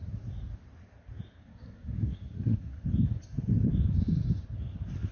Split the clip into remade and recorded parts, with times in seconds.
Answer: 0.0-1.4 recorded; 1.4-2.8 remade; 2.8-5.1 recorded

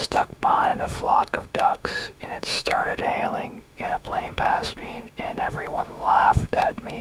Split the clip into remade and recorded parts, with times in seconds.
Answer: 0.0-3.0 remade; 3.0-3.6 recorded; 3.6-7.0 remade

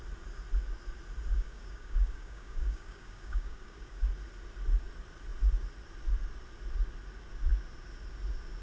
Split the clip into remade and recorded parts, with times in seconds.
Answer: 0.0-1.3 recorded; 1.3-4.1 remade; 4.1-8.6 recorded

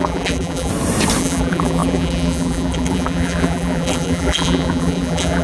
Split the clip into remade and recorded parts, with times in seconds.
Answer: 0.0-0.7 remade; 0.7-1.2 recorded; 1.2-5.4 remade

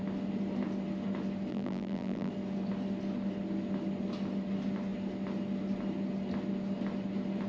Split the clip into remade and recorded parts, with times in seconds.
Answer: 0.0-1.5 recorded; 1.5-2.3 remade; 2.3-7.5 recorded

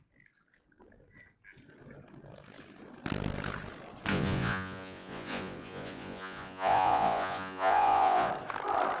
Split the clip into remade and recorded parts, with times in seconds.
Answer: 0.0-4.1 recorded; 4.1-8.3 remade; 8.3-9.0 recorded